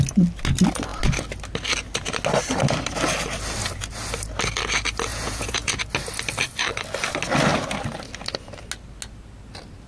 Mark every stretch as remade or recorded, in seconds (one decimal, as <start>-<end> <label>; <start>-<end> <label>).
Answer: 0.0-5.1 recorded; 5.1-5.8 remade; 5.8-9.9 recorded